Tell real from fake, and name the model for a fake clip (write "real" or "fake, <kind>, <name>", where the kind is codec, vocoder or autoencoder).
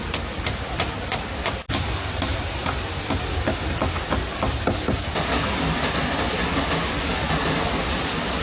real